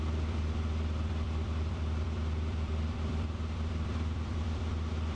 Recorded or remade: remade